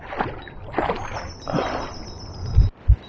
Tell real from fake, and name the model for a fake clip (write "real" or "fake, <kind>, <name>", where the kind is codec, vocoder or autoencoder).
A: real